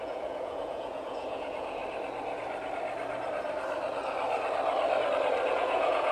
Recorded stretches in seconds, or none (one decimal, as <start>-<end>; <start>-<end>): 1.8-5.5